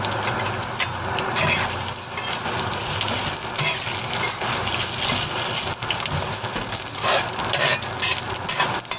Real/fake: real